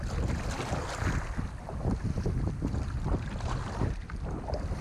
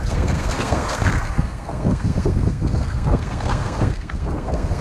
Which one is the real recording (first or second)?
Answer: first